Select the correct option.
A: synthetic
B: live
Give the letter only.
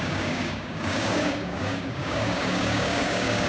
A